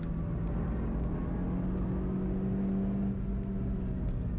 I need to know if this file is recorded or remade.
recorded